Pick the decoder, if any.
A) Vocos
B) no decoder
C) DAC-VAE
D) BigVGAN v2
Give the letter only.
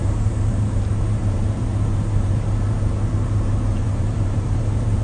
D